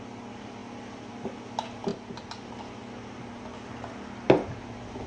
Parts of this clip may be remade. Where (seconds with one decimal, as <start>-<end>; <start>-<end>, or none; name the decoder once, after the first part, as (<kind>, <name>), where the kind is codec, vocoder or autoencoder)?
0.6-1.1 (vocoder, BigVGAN v2); 1.9-2.4